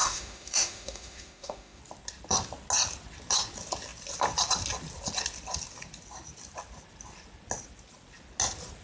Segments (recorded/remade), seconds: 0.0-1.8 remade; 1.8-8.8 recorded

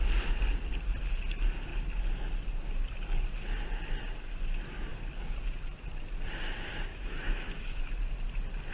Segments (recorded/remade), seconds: 0.0-6.9 recorded; 6.9-7.9 remade; 7.9-8.7 recorded

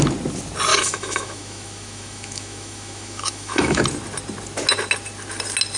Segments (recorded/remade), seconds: 0.0-0.7 recorded; 0.7-3.8 remade; 3.8-5.8 recorded

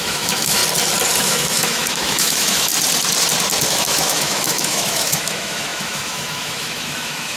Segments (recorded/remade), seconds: 0.0-0.6 remade; 0.6-1.2 recorded; 1.2-2.7 remade; 2.7-3.7 recorded; 3.7-7.4 remade